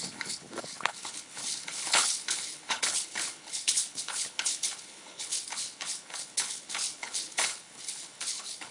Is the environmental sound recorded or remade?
remade